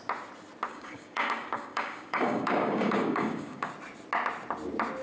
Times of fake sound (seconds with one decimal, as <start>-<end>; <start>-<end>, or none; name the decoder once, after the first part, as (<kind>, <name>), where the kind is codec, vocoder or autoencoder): 0.7-3.7 (codec, DAC)